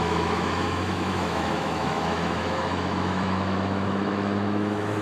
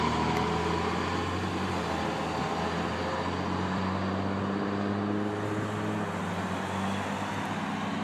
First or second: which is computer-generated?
first